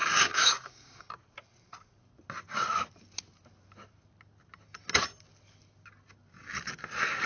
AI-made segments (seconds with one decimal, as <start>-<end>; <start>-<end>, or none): 0.0-1.0